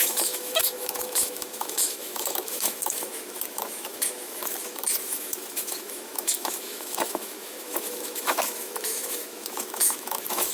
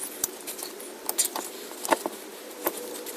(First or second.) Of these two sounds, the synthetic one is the first